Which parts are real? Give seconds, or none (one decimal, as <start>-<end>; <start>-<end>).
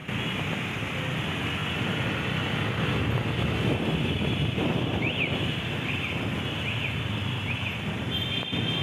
0.0-8.8